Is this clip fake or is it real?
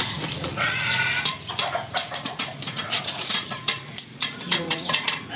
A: fake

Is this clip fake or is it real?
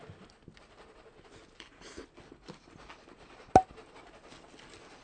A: real